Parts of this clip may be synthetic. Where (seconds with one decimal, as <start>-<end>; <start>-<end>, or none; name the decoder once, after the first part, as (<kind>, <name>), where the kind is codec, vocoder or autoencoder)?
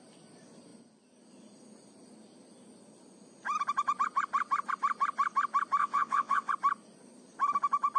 5.8-6.5 (vocoder, WaveNeXt)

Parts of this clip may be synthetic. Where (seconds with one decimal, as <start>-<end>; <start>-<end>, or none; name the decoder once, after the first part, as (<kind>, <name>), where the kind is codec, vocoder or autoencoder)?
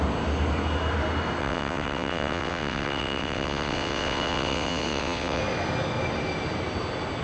1.4-5.4 (vocoder, WaveNeXt)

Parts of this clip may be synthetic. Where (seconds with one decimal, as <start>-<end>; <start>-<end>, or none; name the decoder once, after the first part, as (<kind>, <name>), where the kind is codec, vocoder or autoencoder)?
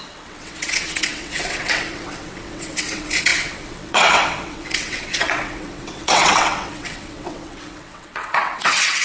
0.0-9.0 (vocoder, WaveNeXt)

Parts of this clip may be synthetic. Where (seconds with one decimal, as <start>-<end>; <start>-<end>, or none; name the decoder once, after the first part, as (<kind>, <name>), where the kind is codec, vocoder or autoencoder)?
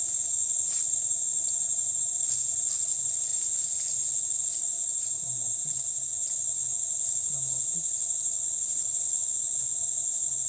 none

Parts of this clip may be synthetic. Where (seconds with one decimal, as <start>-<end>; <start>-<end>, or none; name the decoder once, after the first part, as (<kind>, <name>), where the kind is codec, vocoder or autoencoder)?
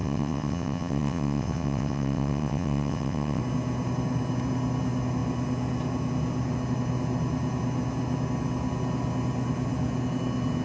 0.0-3.4 (vocoder, WaveNeXt)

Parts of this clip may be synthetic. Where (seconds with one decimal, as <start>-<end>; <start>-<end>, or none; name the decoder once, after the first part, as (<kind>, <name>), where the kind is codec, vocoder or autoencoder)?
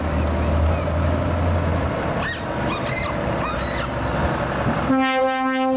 none